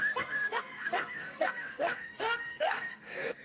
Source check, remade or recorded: remade